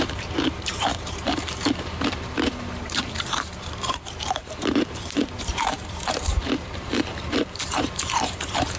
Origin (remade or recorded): remade